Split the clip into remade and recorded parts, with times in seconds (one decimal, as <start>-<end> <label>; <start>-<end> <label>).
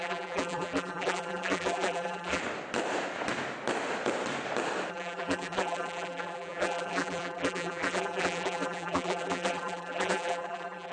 0.0-2.4 remade; 2.4-4.9 recorded; 4.9-10.9 remade